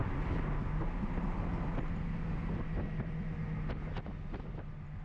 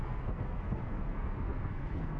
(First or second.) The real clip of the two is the first